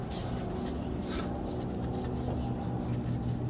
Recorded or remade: recorded